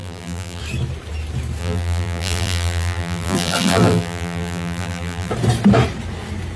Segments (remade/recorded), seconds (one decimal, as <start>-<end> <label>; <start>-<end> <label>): 0.0-0.6 remade; 0.6-1.6 recorded; 1.6-5.3 remade; 5.3-6.6 recorded

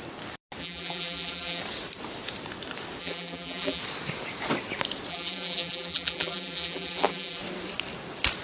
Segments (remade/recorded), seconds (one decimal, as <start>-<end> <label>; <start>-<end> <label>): 0.0-0.6 recorded; 0.6-1.6 remade; 1.6-3.0 recorded; 3.0-3.8 remade; 3.8-5.1 recorded; 5.1-7.4 remade; 7.4-8.4 recorded

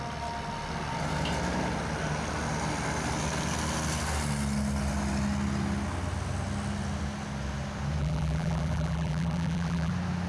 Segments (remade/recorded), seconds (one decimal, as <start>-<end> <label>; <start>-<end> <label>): 0.0-8.0 recorded; 8.0-9.9 remade; 9.9-10.3 recorded